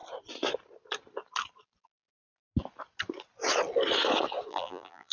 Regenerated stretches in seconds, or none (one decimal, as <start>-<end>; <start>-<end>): 4.5-5.1